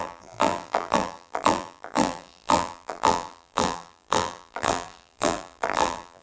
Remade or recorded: remade